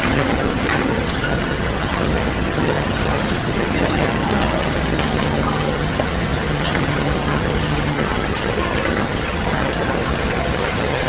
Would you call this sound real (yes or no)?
no